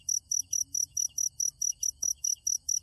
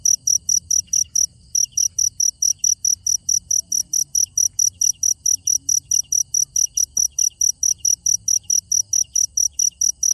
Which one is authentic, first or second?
second